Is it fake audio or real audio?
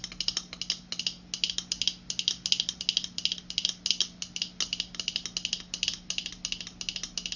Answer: real